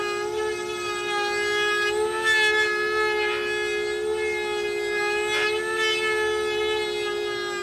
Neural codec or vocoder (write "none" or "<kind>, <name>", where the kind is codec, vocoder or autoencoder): none